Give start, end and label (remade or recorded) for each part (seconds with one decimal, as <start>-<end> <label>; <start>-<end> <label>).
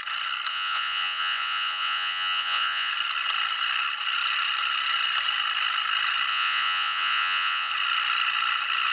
0.0-0.5 recorded; 0.5-2.9 remade; 2.9-6.3 recorded; 6.3-7.7 remade; 7.7-8.9 recorded